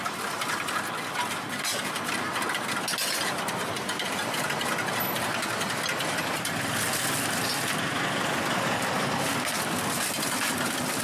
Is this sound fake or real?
fake